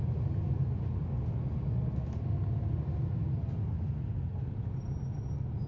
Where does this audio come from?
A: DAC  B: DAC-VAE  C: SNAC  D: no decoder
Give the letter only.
D